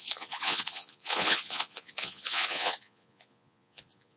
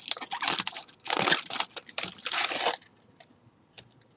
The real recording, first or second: second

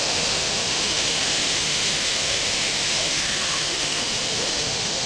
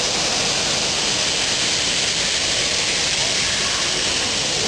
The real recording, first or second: second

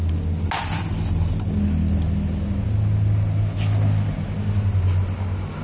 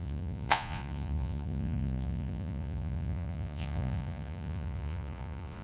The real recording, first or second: first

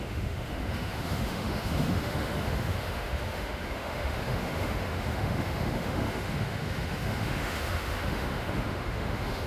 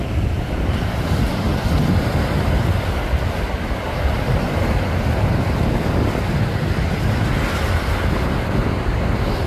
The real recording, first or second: second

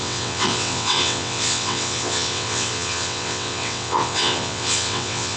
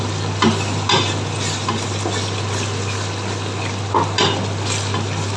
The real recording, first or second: second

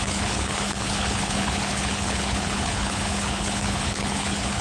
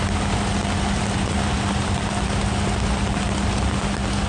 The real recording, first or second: second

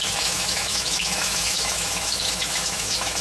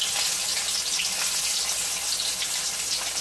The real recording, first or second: second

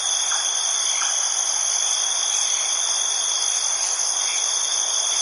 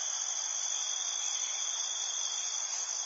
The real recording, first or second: second